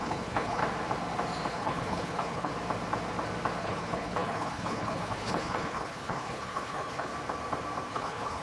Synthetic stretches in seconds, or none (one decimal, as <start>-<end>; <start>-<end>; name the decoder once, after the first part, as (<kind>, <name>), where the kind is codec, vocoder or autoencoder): 0.0-0.6 (codec, HILCodec); 1.5-2.5; 3.6-7.1; 7.9-8.4